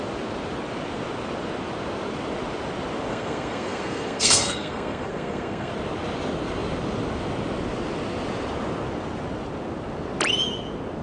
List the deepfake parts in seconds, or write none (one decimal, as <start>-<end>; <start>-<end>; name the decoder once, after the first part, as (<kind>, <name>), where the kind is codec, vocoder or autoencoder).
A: 3.1-5.7 (codec, SNAC)